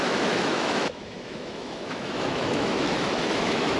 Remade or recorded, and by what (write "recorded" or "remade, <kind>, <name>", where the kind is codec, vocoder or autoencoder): remade, autoencoder, DAC-VAE